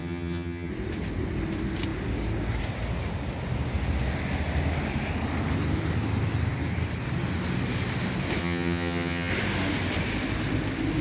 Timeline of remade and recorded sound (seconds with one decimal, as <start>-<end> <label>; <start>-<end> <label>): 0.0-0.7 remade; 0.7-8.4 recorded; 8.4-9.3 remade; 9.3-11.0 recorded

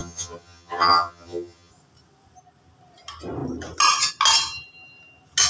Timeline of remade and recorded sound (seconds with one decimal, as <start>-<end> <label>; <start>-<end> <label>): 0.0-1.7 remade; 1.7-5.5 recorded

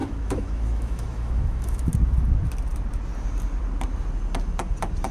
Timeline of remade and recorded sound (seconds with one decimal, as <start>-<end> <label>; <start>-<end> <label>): 0.0-1.9 remade; 1.9-5.1 recorded